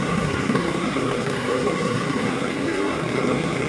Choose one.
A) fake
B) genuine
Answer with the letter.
A